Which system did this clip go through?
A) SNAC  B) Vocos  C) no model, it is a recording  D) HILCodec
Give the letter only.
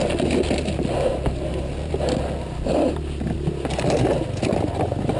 C